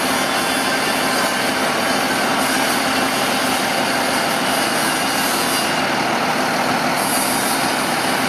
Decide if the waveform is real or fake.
real